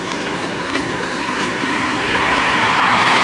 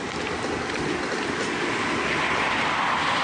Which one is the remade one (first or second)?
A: first